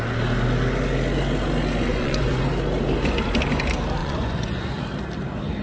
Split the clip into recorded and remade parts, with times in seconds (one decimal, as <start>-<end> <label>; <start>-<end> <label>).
0.0-1.9 recorded; 1.9-2.4 remade; 2.4-4.0 recorded; 4.0-4.8 remade; 4.8-5.6 recorded